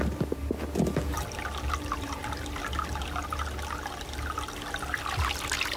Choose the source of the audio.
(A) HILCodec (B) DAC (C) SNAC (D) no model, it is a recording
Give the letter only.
D